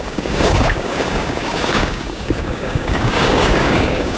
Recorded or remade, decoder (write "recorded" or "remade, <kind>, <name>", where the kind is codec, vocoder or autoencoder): remade, codec, DAC